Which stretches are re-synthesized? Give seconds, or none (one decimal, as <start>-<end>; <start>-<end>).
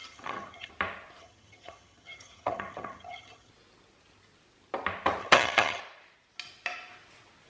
0.0-0.7; 1.2-3.5; 5.2-5.8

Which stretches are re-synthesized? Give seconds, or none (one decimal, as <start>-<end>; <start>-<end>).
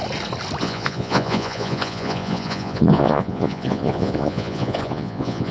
0.6-5.5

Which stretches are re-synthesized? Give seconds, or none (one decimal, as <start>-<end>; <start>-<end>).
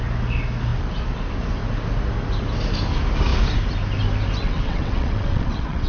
4.4-5.9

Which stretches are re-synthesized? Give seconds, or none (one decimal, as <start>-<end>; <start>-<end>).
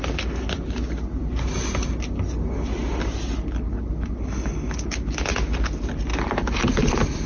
none